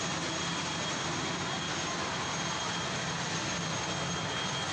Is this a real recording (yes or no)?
yes